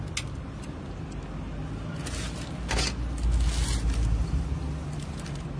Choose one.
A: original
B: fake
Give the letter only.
A